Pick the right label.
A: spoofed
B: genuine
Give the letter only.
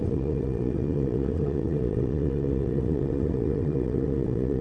A